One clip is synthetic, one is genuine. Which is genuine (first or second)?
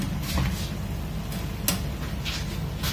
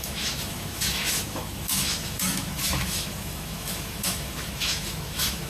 first